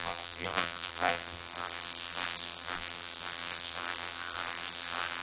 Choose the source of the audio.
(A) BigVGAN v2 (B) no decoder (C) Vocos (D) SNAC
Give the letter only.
A